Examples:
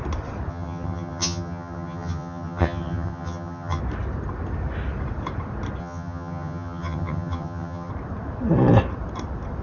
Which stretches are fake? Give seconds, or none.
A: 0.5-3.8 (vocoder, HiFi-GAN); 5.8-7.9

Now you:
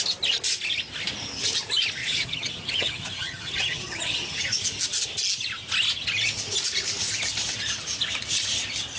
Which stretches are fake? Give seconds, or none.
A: 2.0-4.5 (vocoder, HiFi-GAN)

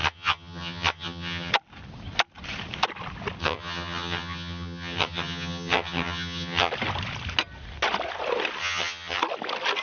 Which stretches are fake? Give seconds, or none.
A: 0.0-1.5 (vocoder, HiFi-GAN); 3.4-6.7; 8.6-9.2

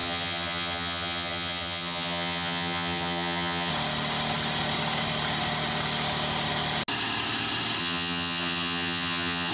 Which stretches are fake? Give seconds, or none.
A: 0.0-3.7 (vocoder, HiFi-GAN); 7.8-9.5

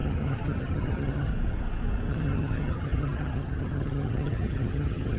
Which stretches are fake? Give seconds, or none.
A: 0.0-1.3 (vocoder, HiFi-GAN); 2.1-5.2